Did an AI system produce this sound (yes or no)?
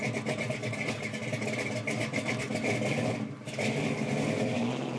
no